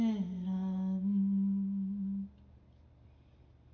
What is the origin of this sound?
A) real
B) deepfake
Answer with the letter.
A